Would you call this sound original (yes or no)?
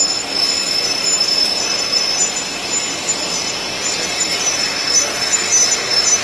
yes